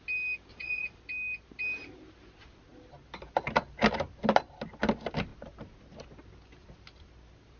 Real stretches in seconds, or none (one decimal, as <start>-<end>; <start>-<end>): 0.0-0.5; 1.0-7.6